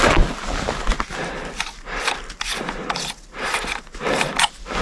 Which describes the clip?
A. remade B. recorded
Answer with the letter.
B